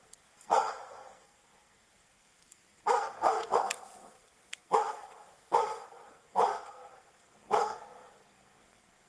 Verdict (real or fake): fake